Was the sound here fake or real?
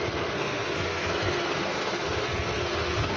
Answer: fake